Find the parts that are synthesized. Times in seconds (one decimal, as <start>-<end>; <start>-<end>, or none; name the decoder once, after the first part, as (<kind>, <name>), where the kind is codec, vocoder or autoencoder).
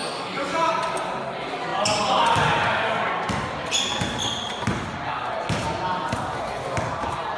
0.0-0.7 (codec, DAC)